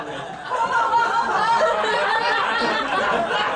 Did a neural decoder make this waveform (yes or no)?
no